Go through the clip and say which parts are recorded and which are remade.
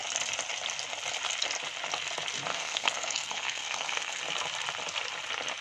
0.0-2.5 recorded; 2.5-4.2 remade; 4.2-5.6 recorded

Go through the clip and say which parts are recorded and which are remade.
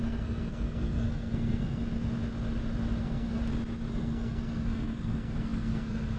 0.0-1.8 remade; 1.8-3.0 recorded; 3.0-3.4 remade; 3.4-3.9 recorded; 3.9-6.2 remade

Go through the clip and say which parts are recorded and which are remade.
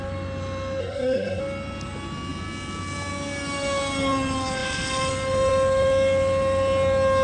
0.0-0.8 recorded; 0.8-1.4 remade; 1.4-7.2 recorded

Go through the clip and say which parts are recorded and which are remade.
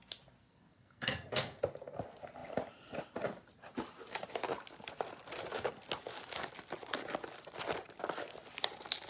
0.0-0.4 recorded; 0.4-1.6 remade; 1.6-9.1 recorded